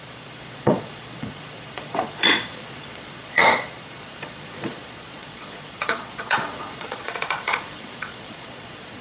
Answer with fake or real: fake